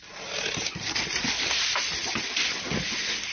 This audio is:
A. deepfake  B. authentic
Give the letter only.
B